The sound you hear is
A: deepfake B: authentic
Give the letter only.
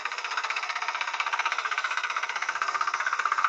A